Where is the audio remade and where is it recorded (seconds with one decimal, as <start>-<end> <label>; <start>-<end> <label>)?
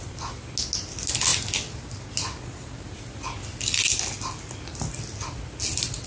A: 0.0-6.1 recorded